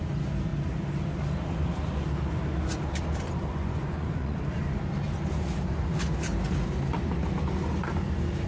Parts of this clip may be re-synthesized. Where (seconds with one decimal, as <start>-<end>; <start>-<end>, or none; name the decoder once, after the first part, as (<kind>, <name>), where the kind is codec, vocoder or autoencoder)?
3.5-4.4 (vocoder, Vocos)